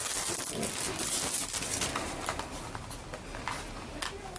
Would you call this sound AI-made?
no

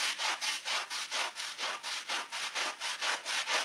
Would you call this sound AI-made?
no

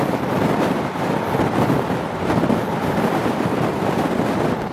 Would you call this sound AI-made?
yes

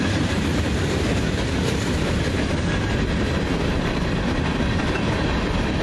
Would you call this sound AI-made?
yes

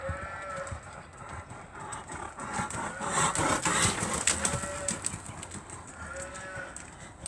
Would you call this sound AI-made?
no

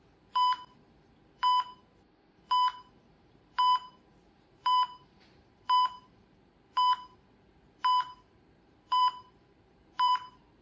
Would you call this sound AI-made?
yes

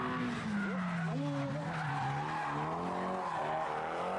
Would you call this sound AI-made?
no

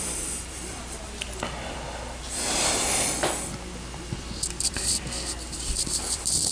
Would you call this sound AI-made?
yes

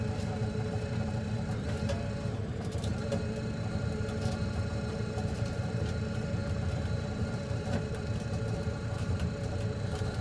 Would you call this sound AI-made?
yes